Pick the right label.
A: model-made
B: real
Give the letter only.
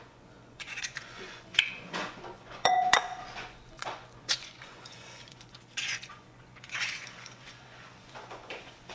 A